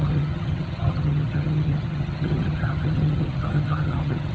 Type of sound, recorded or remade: remade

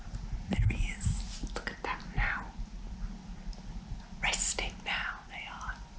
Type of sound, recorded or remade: recorded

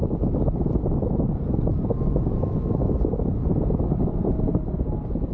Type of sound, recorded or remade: recorded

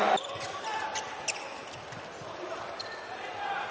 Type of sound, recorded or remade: recorded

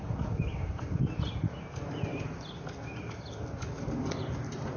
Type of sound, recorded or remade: recorded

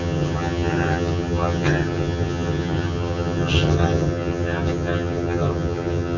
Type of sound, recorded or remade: remade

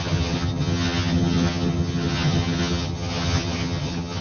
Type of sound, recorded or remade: remade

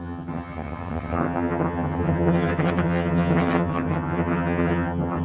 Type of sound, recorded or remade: remade